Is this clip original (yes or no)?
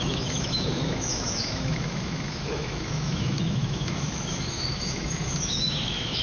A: no